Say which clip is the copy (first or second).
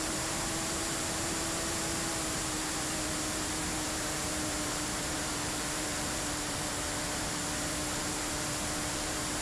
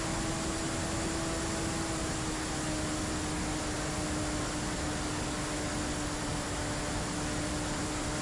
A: first